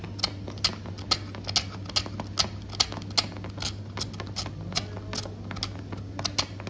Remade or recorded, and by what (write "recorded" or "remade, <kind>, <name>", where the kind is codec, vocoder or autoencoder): recorded